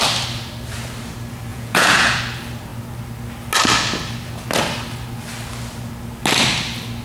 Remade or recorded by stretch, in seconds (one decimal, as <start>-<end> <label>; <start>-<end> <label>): 0.0-1.5 recorded; 1.5-2.2 remade; 2.2-7.0 recorded

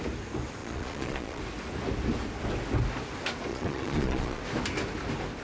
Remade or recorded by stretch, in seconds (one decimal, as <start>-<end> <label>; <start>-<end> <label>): 0.0-0.6 recorded; 0.6-1.4 remade; 1.4-3.5 recorded; 3.5-4.4 remade; 4.4-5.4 recorded

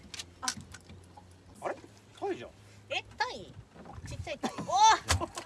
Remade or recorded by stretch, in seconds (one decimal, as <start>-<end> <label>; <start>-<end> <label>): 0.0-5.5 recorded

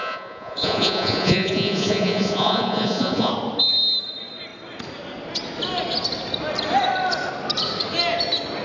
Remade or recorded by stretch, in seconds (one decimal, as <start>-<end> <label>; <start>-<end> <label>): 0.0-3.3 remade; 3.3-8.6 recorded

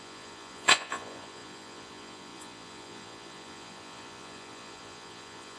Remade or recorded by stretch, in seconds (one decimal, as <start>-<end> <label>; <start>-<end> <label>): 0.0-5.6 remade

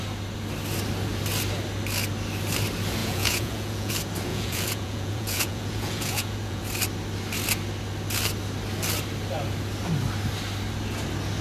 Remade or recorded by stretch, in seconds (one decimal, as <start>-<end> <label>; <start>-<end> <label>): 0.0-3.0 recorded; 3.0-3.9 remade; 3.9-4.3 recorded; 4.3-6.6 remade; 6.6-11.4 recorded

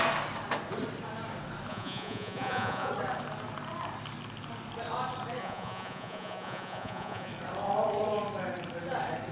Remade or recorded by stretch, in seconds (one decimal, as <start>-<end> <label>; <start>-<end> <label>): 0.0-1.7 recorded; 1.7-2.9 remade; 2.9-5.4 recorded; 5.4-7.3 remade; 7.3-9.3 recorded